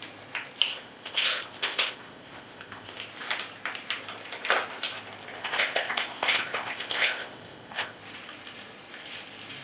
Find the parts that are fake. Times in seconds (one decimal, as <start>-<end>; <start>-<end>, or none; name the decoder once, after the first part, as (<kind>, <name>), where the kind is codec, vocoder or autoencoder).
0.7-3.0 (codec, ZipCodec); 5.4-8.0